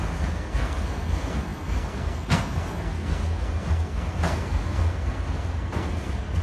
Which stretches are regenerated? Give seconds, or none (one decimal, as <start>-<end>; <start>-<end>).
0.0-6.4